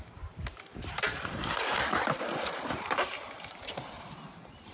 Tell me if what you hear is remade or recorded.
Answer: remade